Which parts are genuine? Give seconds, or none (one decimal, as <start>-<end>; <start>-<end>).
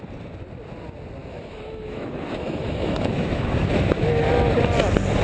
0.0-1.2; 4.3-5.2